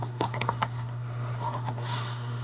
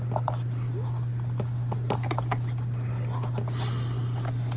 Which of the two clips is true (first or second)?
second